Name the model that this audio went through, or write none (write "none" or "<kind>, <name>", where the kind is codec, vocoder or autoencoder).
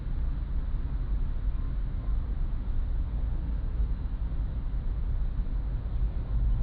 none